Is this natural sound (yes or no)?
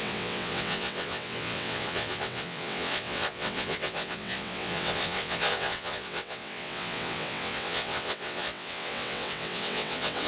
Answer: no